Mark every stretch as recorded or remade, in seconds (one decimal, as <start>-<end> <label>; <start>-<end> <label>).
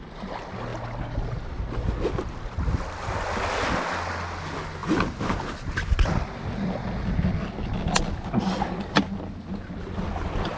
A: 0.0-10.6 recorded